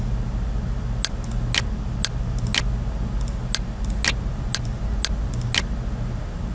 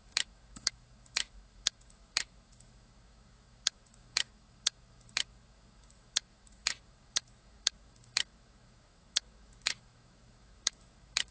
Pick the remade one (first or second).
second